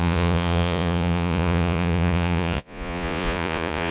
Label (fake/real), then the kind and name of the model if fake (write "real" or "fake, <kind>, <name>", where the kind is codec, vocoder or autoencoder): fake, vocoder, Vocos